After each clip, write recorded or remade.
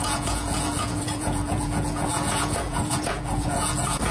remade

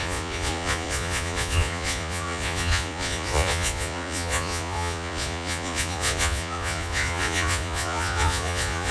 remade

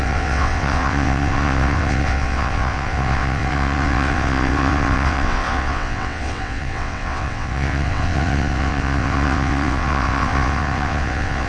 remade